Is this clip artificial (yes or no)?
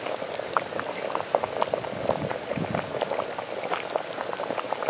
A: no